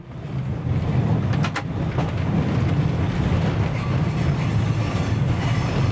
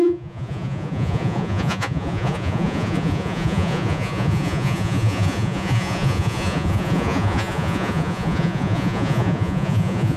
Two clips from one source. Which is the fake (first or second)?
second